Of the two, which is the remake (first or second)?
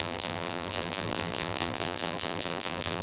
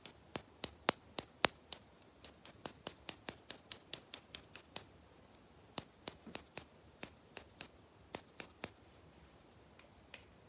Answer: first